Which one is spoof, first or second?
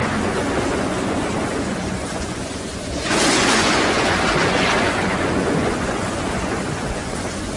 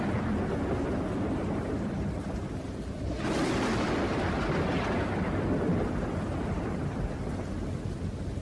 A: first